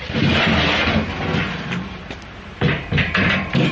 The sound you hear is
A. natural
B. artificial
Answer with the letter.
A